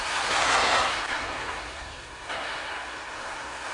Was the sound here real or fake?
fake